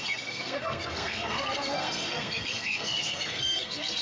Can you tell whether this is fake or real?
fake